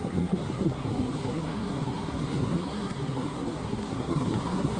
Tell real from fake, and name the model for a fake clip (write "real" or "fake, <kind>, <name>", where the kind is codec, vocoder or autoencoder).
fake, codec, SNAC